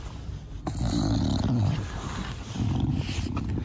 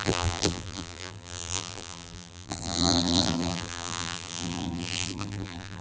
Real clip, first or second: first